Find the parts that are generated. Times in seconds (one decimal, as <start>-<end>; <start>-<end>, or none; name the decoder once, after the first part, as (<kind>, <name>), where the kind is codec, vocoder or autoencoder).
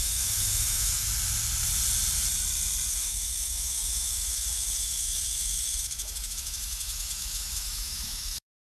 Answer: 0.0-1.1 (autoencoder, DAC-VAE); 2.9-8.8